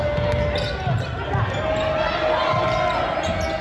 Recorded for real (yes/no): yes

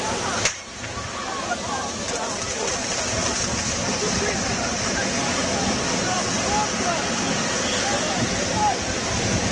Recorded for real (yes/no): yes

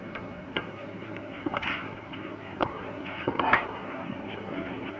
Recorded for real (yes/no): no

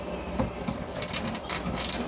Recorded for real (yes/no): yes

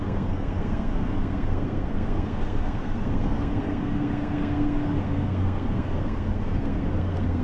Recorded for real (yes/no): no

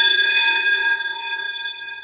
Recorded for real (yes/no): no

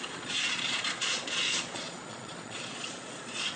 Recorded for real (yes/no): no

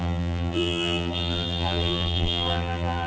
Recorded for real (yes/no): no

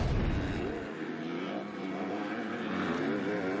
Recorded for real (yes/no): yes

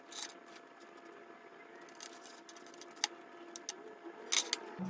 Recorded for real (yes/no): yes